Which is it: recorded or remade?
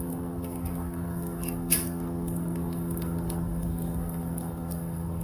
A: remade